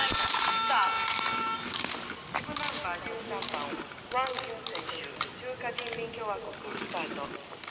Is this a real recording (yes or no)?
yes